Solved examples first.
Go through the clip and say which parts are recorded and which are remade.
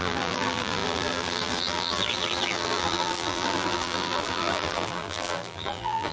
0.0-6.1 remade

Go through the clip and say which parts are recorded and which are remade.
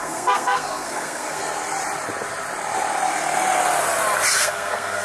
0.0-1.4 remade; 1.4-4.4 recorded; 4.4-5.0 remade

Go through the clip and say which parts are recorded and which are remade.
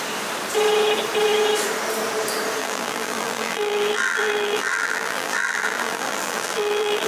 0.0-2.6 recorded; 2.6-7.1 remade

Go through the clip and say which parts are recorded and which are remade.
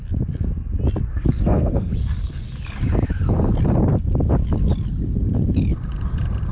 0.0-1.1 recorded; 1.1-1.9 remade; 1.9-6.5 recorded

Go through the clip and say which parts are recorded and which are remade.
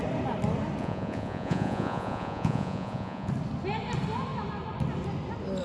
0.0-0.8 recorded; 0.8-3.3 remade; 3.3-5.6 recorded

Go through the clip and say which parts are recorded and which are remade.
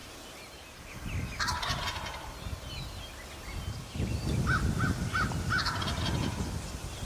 0.0-7.1 recorded